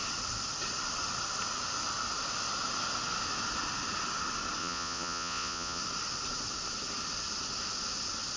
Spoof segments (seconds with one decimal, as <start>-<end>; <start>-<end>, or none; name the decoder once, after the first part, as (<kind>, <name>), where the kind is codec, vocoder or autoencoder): 4.6-5.8 (vocoder, Vocos)